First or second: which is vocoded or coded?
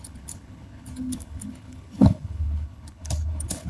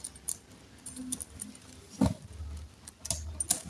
first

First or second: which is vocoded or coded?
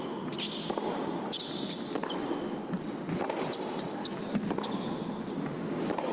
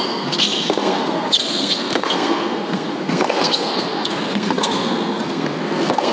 second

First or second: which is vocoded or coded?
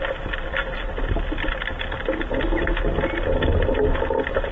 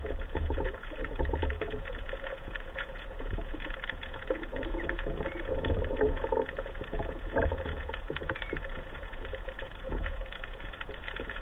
second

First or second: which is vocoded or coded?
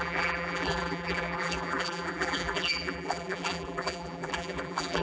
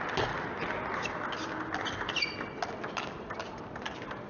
first